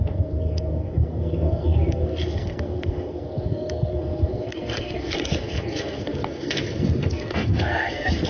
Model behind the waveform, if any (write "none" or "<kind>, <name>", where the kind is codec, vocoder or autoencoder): codec, SNAC